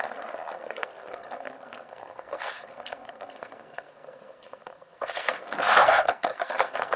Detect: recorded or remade remade